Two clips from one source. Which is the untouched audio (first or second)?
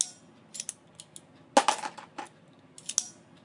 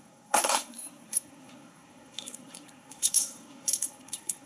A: first